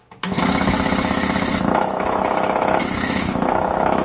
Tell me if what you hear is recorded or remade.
remade